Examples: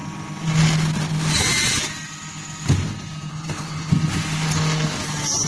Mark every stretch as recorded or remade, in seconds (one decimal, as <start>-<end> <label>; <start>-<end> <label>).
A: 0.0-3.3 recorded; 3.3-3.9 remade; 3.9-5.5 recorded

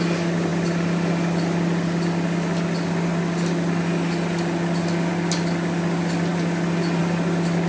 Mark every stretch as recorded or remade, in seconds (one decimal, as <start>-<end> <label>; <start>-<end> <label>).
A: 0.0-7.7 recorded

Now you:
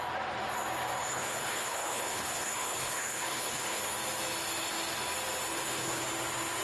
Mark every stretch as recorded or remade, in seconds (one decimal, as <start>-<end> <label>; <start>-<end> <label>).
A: 0.0-1.0 recorded; 1.0-3.8 remade; 3.8-5.5 recorded; 5.5-6.0 remade; 6.0-6.6 recorded

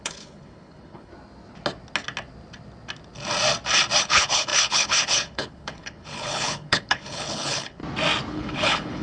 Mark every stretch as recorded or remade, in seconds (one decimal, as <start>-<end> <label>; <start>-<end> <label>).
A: 0.0-1.1 remade; 1.1-4.0 recorded; 4.0-7.8 remade; 7.8-8.3 recorded; 8.3-9.0 remade

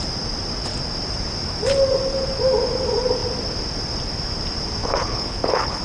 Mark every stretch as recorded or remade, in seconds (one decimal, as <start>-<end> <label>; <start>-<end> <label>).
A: 0.0-4.8 recorded; 4.8-5.8 remade

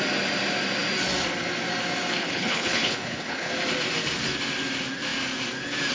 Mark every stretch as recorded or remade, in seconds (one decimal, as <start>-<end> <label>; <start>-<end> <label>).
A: 0.0-2.2 recorded; 2.2-3.5 remade; 3.5-5.9 recorded